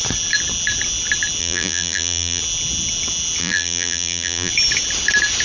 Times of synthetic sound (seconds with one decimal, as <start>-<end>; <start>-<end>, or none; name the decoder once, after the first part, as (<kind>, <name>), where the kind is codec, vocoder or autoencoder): 1.4-2.4 (vocoder, BigVGAN v2); 3.4-4.5